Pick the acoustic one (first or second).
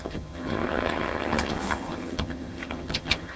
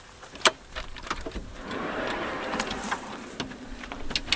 second